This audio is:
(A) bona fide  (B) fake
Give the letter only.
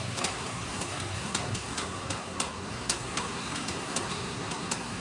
B